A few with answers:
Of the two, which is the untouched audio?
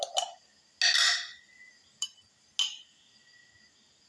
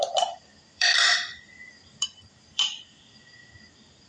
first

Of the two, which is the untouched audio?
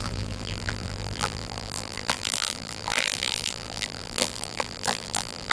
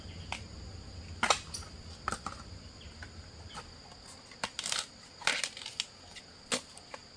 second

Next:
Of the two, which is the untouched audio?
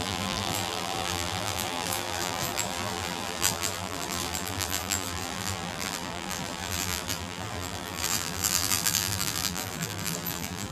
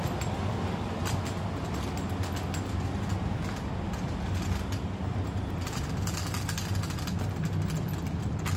second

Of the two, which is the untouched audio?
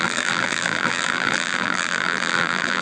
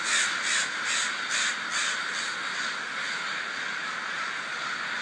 second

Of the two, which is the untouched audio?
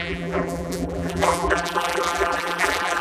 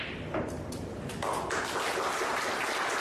second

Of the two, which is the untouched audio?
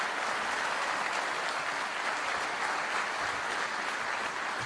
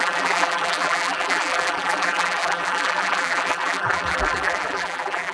first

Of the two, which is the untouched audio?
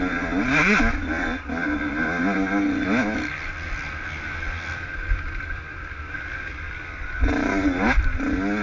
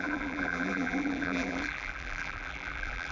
first